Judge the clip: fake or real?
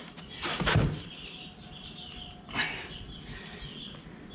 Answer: real